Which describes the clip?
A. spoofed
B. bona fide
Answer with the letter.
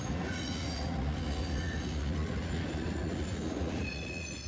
A